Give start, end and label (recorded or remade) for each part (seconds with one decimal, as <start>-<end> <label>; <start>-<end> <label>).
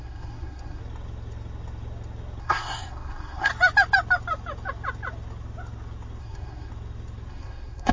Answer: 0.0-0.8 remade; 0.8-2.4 recorded; 2.4-3.5 remade; 3.5-6.2 recorded; 6.2-6.7 remade; 6.7-7.3 recorded; 7.3-7.9 remade